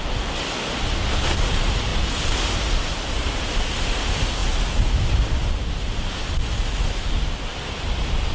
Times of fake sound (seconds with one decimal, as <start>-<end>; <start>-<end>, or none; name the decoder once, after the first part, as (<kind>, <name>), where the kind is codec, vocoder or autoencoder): none